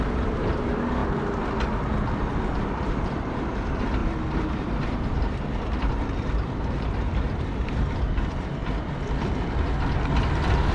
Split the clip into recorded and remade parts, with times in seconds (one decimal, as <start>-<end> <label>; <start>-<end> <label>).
0.0-1.0 remade; 1.0-2.6 recorded; 2.6-8.6 remade; 8.6-10.7 recorded